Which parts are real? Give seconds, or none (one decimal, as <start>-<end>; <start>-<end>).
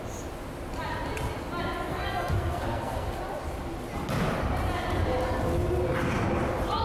0.0-1.9; 3.2-6.8